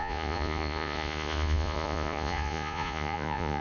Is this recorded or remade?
remade